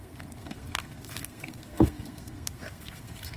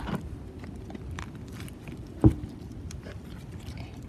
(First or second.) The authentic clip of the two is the second